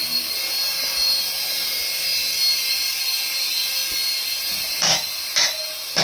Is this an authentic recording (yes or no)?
yes